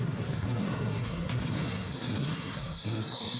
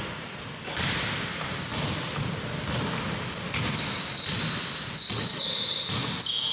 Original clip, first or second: second